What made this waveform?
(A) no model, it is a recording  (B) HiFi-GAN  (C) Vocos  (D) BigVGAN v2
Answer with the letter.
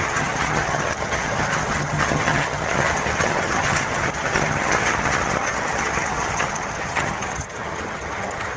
B